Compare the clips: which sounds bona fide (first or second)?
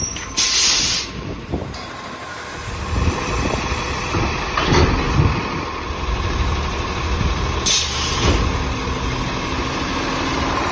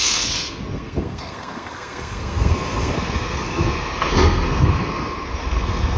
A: first